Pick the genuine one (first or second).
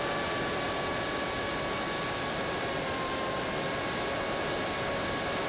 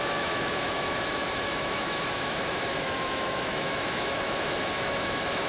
first